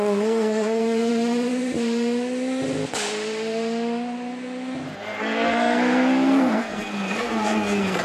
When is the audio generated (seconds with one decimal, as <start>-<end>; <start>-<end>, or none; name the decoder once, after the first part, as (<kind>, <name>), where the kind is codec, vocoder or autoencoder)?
0.0-1.1 (codec, SNAC); 5.2-8.0